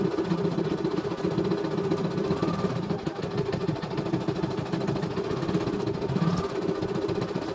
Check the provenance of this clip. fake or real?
real